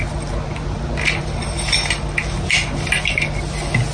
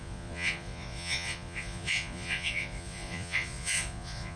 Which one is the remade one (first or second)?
second